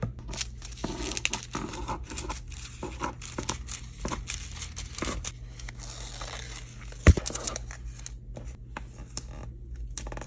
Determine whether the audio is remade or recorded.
recorded